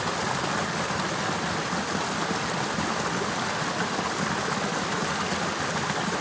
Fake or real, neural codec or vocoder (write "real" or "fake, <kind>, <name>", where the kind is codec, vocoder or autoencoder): real